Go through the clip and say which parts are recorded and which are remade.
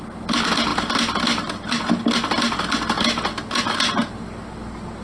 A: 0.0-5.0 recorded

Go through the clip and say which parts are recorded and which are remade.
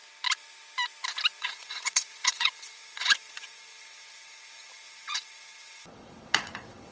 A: 0.0-1.4 recorded; 1.4-6.9 remade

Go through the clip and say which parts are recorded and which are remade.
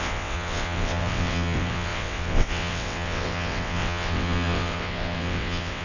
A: 0.0-5.8 remade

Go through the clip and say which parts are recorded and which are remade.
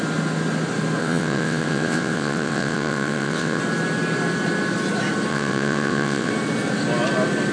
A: 0.0-1.0 recorded; 1.0-3.6 remade; 3.6-5.3 recorded; 5.3-6.3 remade; 6.3-7.5 recorded